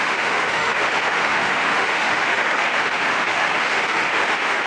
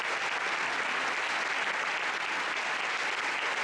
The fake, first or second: first